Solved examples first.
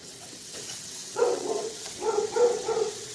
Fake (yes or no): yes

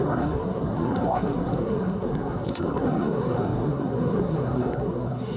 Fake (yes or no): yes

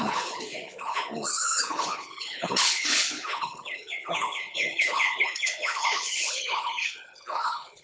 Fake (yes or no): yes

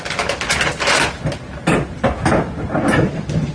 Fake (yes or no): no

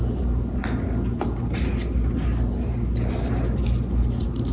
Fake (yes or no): no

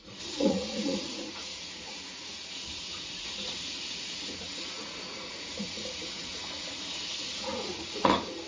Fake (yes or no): yes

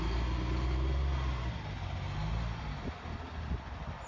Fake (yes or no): no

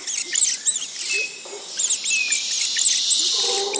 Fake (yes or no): no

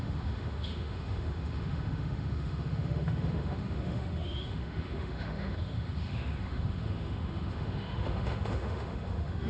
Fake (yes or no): yes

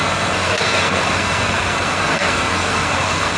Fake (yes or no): yes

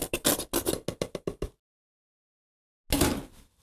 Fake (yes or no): no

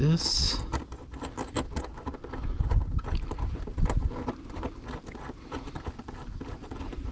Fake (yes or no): no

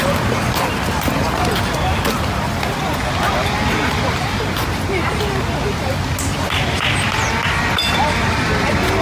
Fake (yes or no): no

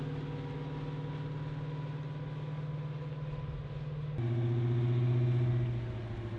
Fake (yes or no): no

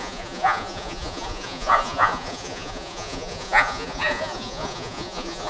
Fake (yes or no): yes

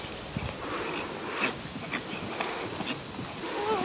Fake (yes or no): no